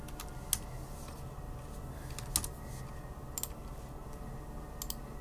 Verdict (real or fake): real